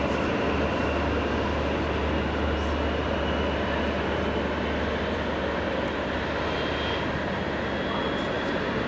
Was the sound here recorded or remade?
recorded